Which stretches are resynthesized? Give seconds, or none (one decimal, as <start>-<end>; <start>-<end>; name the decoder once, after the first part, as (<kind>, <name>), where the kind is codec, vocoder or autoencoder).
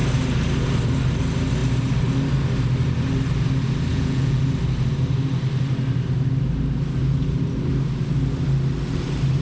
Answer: 3.9-4.4 (vocoder, Vocos)